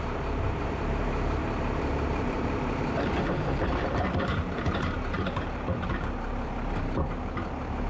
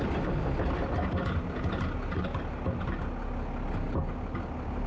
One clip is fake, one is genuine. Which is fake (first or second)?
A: first